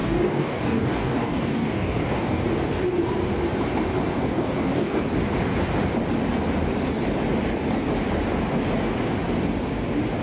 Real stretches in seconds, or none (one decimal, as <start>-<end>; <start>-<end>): 2.4-4.1; 5.0-10.2